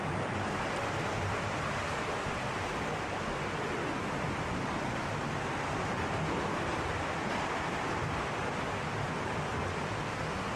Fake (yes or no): no